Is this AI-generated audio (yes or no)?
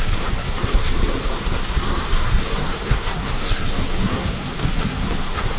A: yes